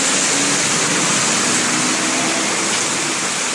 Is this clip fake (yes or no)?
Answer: no